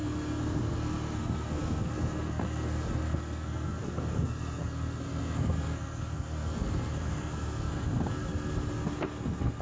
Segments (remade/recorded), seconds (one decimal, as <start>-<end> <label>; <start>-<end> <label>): 0.0-9.6 remade